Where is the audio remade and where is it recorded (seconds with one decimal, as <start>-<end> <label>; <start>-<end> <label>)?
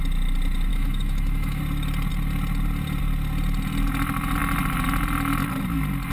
0.0-0.7 recorded; 0.7-1.6 remade; 1.6-6.1 recorded